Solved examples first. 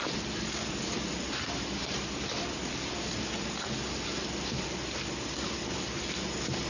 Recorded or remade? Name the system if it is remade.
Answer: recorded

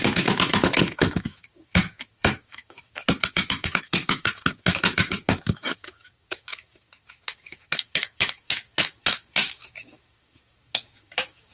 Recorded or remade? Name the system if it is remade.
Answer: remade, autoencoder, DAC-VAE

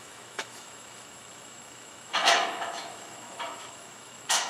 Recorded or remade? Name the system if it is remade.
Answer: remade, autoencoder, DAC-VAE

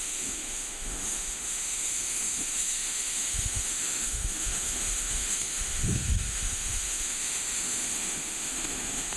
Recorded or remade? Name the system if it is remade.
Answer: remade, autoencoder, DAC-VAE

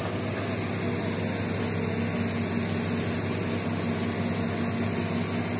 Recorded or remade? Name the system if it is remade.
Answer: recorded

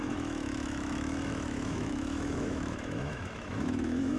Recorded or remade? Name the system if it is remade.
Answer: remade, autoencoder, DAC-VAE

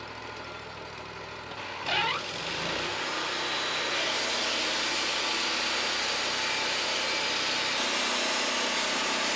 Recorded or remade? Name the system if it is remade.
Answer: recorded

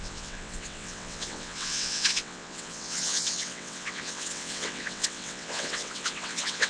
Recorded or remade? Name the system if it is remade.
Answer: remade, vocoder, WaveNeXt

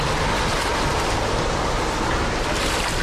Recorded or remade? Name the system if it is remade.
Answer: recorded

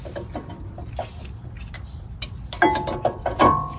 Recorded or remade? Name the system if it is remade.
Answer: recorded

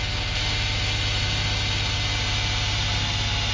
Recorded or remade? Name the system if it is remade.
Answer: recorded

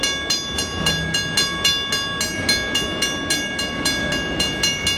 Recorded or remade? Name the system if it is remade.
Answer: recorded